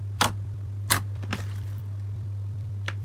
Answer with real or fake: fake